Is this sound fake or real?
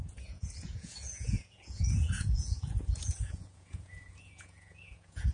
fake